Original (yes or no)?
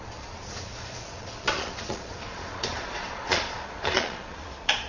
no